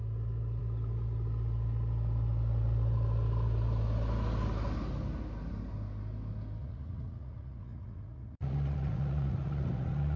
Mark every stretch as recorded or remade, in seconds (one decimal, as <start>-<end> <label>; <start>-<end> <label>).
0.0-6.6 recorded; 6.6-10.2 remade